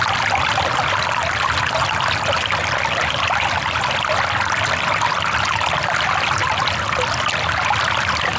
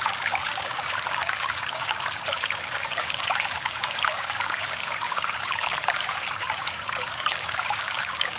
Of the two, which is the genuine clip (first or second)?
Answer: first